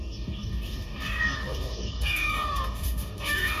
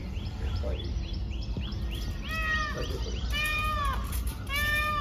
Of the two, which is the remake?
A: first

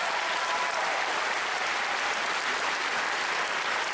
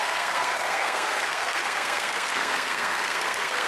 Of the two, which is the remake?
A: second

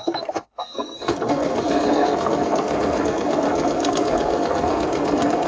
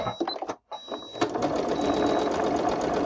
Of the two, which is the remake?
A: first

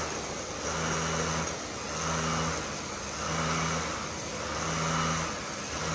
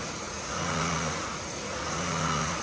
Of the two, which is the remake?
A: second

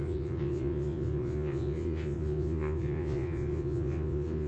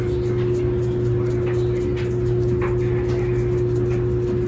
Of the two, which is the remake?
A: first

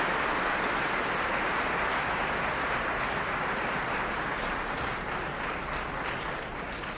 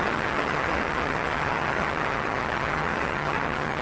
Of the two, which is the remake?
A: second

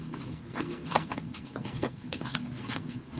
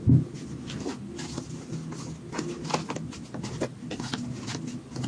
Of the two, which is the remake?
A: first